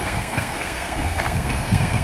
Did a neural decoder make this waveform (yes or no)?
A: yes